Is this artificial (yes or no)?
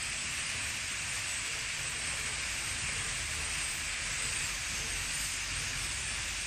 no